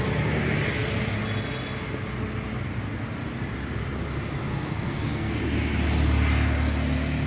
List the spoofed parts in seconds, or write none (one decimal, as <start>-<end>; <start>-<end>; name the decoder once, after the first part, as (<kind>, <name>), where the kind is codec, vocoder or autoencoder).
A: 4.5-5.4 (codec, SNAC)